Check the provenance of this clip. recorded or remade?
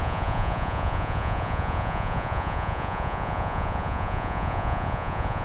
remade